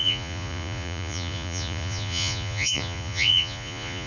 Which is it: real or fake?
fake